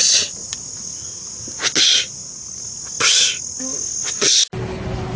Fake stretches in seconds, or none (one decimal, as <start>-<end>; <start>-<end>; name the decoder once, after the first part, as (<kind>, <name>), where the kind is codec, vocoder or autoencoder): none